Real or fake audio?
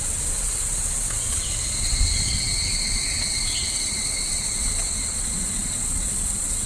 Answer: fake